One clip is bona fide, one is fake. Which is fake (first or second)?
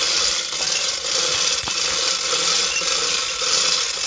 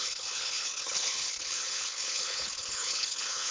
second